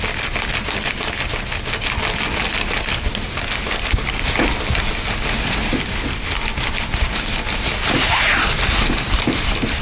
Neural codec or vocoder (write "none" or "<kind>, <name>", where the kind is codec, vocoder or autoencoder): none